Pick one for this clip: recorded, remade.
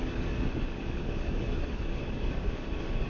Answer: remade